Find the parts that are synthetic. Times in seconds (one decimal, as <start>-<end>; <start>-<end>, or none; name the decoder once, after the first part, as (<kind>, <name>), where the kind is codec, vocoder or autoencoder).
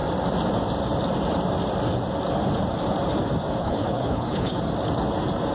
3.6-4.6 (codec, HILCodec)